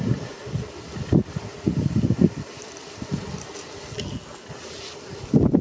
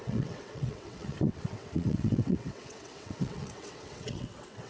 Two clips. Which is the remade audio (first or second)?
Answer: second